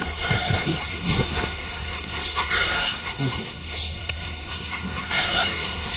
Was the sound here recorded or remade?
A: remade